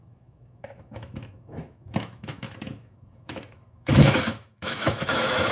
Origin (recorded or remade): remade